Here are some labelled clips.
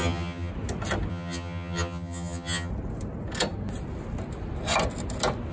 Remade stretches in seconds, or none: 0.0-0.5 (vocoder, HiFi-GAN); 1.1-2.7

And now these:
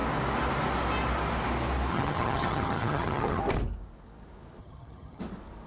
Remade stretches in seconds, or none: 1.9-3.4 (vocoder, HiFi-GAN); 4.6-5.2

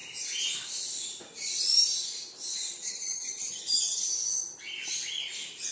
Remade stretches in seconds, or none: 2.5-4.1 (vocoder, HiFi-GAN)

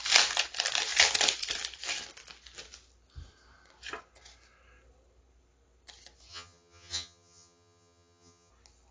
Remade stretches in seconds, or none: 6.3-8.5 (vocoder, HiFi-GAN)